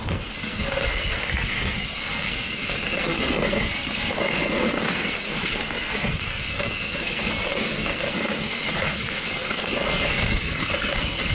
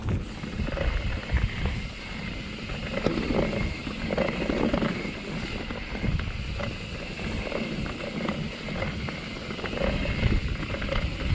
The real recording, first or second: second